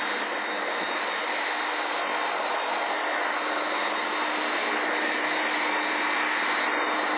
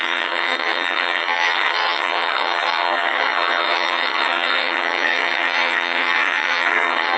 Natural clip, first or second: first